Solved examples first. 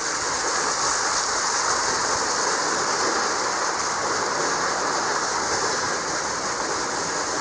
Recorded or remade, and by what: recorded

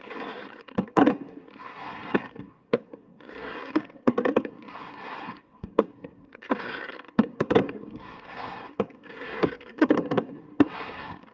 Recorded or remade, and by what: remade, codec, SNAC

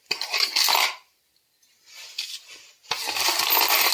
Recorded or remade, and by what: recorded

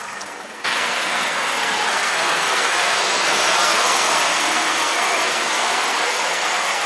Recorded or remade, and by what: remade, codec, SNAC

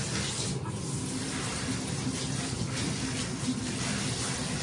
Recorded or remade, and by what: recorded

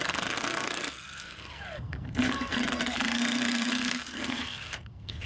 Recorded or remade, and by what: remade, codec, SNAC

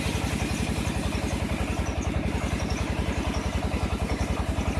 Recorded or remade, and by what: recorded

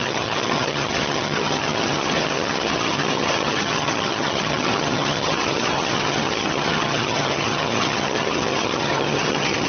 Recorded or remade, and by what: remade, vocoder, HiFi-GAN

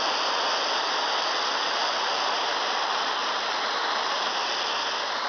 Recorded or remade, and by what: recorded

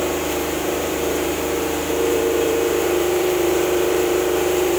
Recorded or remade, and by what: remade, vocoder, BigVGAN v2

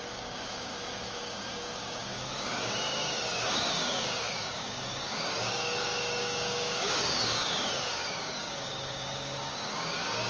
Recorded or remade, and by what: remade, codec, DAC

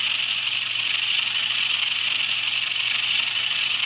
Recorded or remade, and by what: recorded